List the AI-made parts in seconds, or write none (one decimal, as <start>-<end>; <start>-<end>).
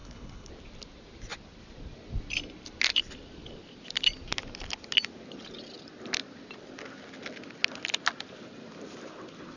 0.0-0.5